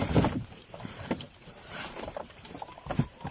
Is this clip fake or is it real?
fake